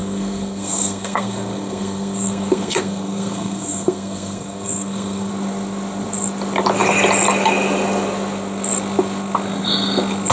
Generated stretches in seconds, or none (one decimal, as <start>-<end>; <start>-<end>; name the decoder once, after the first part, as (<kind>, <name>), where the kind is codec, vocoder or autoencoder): 0.0-5.3 (codec, SNAC)